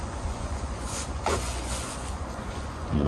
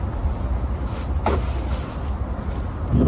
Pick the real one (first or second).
second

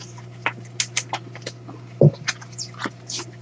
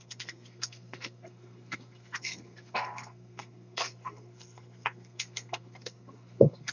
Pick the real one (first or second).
first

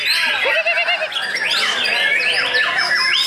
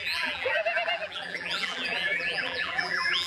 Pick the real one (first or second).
first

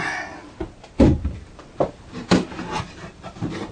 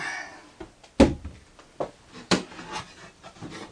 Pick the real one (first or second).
second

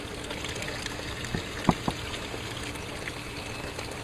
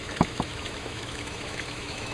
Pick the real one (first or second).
first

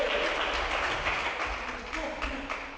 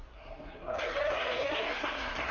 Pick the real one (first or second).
first